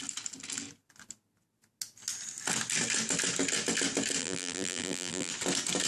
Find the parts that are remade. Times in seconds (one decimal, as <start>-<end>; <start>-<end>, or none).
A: 4.2-5.3